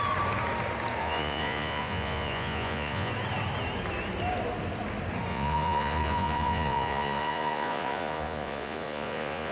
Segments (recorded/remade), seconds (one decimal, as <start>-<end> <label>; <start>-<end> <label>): 0.0-1.0 recorded; 1.0-3.1 remade; 3.1-5.3 recorded; 5.3-9.5 remade